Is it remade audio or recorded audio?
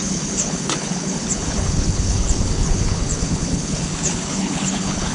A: remade